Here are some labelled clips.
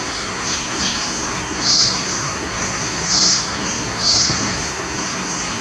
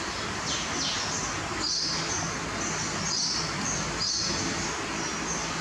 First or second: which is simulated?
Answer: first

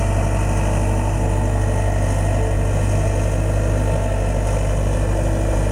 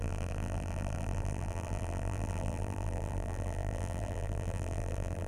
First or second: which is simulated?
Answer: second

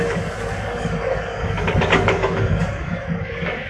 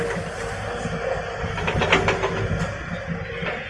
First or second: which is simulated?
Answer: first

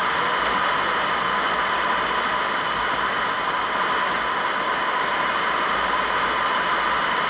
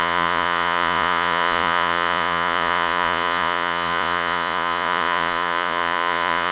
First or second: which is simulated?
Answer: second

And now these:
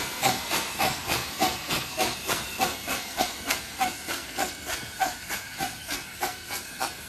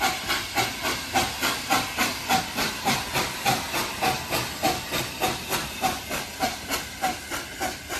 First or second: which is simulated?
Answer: first